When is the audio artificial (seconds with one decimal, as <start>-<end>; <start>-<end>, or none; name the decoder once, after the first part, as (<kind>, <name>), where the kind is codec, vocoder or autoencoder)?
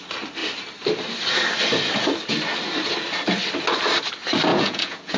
4.5-5.2 (vocoder, Vocos)